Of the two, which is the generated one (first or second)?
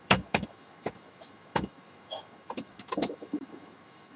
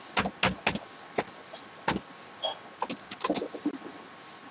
first